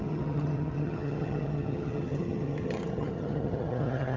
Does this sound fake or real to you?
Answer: fake